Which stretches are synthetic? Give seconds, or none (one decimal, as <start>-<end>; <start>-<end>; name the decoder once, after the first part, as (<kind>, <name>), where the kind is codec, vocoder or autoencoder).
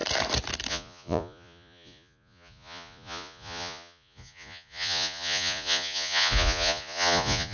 0.7-7.5 (vocoder, Vocos)